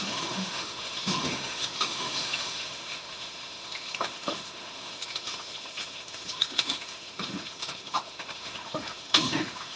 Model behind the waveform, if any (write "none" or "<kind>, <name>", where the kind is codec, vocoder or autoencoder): autoencoder, DAC-VAE